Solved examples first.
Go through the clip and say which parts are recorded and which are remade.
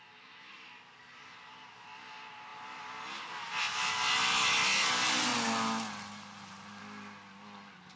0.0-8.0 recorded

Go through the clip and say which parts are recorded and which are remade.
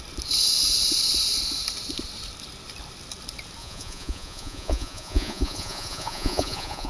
0.0-3.6 recorded; 3.6-6.9 remade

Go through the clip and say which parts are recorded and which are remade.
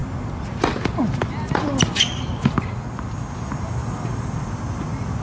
0.0-5.2 recorded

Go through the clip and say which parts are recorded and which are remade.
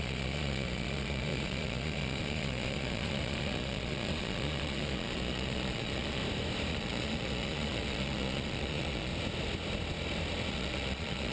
0.0-6.2 remade; 6.2-6.7 recorded; 6.7-9.1 remade; 9.1-10.5 recorded; 10.5-11.3 remade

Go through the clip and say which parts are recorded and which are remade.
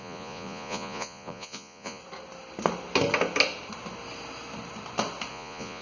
0.0-2.0 remade; 2.0-5.3 recorded; 5.3-5.8 remade